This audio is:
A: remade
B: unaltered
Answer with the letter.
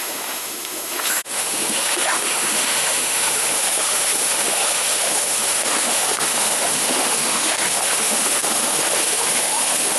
A